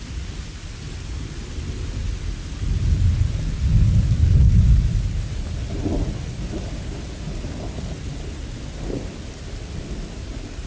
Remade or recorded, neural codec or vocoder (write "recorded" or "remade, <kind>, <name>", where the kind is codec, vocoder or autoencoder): recorded